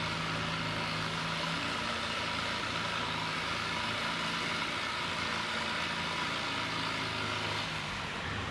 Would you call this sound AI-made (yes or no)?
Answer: no